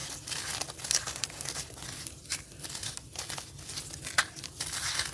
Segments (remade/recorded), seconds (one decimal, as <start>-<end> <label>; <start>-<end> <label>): 0.0-5.1 recorded